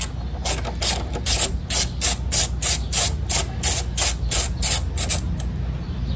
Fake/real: real